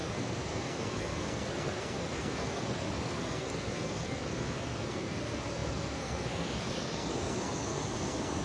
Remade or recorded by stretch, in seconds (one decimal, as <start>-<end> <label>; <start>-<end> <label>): 0.0-8.4 remade